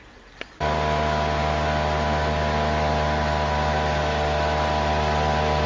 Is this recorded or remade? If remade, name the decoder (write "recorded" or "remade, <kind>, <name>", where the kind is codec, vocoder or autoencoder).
recorded